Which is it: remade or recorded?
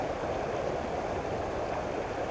recorded